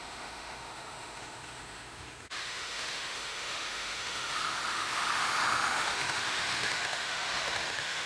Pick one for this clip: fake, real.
fake